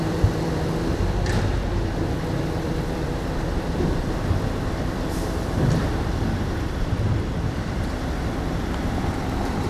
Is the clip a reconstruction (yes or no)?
yes